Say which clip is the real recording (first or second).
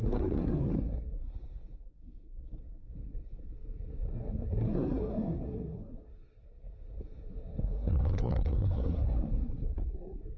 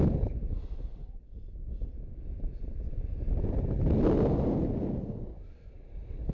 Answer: second